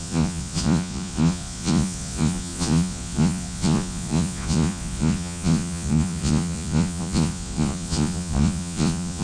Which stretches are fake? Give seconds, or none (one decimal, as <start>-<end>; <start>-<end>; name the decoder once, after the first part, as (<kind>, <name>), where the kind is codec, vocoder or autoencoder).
0.0-9.2 (vocoder, Vocos)